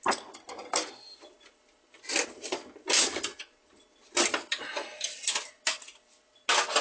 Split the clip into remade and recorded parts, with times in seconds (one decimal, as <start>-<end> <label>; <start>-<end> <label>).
0.0-0.6 recorded; 0.6-2.0 remade; 2.0-6.8 recorded